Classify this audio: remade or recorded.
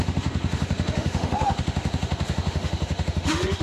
remade